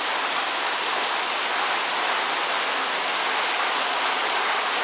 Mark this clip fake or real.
real